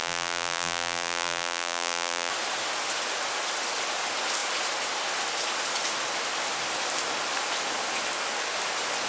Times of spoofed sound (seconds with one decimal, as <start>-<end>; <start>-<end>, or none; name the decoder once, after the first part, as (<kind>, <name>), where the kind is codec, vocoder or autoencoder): 0.0-2.3 (vocoder, BigVGAN v2)